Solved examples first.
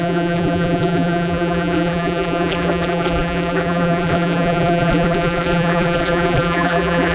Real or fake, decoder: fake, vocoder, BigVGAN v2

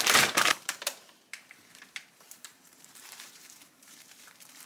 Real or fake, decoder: fake, vocoder, BigVGAN v2